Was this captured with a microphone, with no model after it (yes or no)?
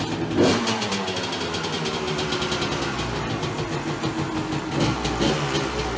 yes